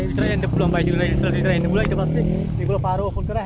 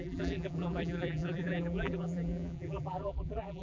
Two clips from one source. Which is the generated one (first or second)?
second